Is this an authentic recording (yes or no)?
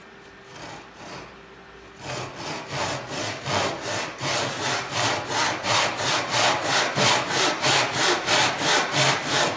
yes